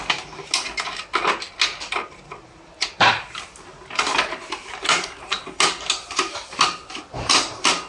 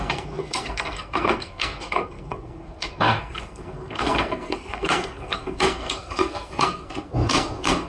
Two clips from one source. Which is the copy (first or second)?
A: second